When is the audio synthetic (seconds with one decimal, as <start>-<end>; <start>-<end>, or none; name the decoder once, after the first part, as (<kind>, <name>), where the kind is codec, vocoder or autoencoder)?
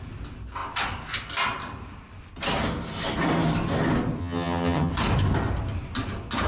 4.2-4.9 (vocoder, HiFi-GAN)